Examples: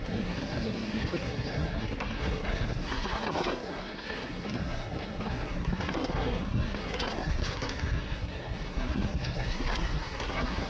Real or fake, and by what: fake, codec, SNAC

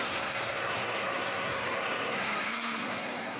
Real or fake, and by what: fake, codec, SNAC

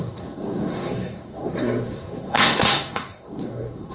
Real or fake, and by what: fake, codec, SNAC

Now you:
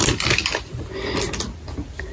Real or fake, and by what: real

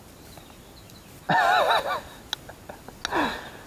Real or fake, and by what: real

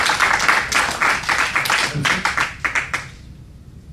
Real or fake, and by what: real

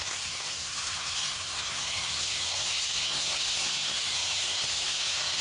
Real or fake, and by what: fake, codec, SNAC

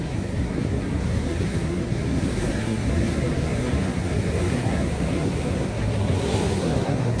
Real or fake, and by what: fake, codec, SNAC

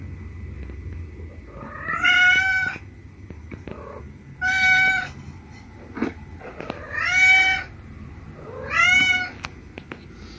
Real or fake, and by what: real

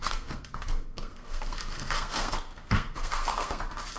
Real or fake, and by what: fake, codec, SNAC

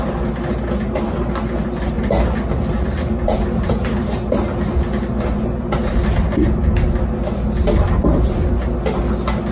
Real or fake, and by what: real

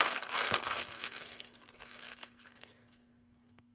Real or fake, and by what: fake, codec, SNAC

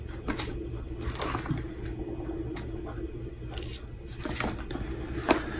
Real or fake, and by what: real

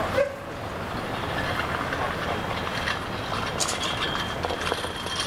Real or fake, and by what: real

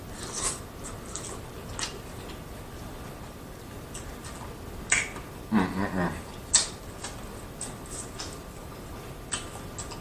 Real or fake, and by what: real